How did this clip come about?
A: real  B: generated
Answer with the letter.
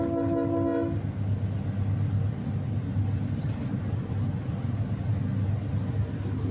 A